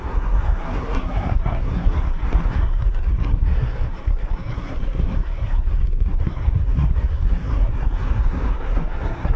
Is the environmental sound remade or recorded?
remade